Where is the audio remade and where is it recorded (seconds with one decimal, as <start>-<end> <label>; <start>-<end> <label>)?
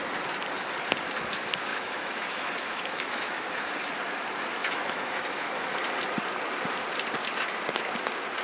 0.0-1.7 recorded; 1.7-3.7 remade; 3.7-4.6 recorded; 4.6-5.7 remade; 5.7-8.4 recorded